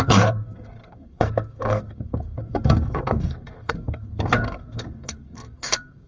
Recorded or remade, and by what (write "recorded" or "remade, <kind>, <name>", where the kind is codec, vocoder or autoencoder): remade, codec, SNAC